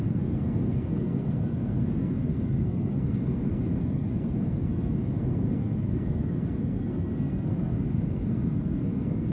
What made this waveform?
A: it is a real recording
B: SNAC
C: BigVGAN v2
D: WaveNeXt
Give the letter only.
B